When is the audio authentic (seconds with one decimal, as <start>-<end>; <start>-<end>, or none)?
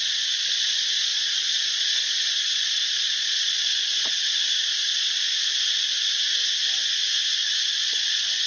5.3-7.4